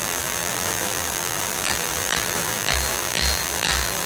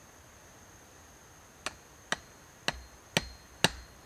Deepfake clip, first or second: first